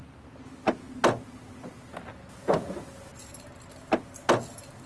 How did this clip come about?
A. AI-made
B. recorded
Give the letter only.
B